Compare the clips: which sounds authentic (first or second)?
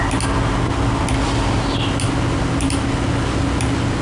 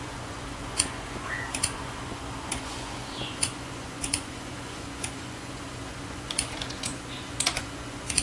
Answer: first